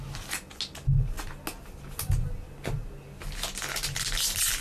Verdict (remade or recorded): recorded